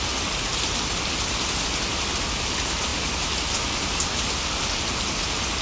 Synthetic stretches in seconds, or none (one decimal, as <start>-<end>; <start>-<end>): none